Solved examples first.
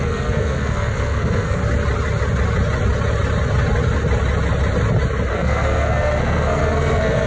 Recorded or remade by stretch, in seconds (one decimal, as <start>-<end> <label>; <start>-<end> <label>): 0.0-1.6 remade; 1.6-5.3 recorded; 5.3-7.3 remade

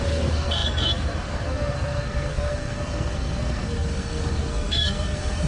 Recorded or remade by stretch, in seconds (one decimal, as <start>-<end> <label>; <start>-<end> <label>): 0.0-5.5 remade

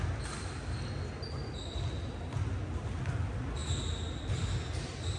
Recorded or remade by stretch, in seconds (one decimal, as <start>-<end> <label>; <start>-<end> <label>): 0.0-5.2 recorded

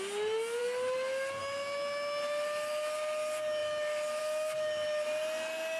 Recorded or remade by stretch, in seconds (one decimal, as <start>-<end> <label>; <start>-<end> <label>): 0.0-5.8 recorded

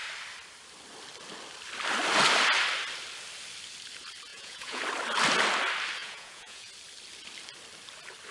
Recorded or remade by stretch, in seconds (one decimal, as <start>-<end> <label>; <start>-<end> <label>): 0.0-4.3 recorded; 4.3-4.8 remade; 4.8-6.0 recorded; 6.0-6.7 remade; 6.7-8.3 recorded

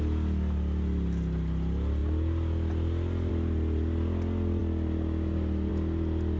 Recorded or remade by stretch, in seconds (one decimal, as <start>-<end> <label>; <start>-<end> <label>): 0.0-6.4 recorded

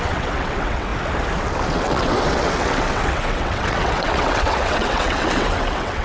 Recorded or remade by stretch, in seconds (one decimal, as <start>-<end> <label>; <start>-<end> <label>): 0.0-0.9 remade; 0.9-1.7 recorded; 1.7-6.0 remade